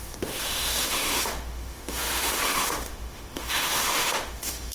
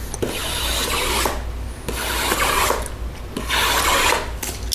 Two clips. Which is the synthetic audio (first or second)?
first